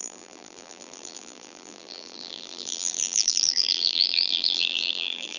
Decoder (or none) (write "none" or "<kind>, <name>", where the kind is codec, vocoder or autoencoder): vocoder, BigVGAN v2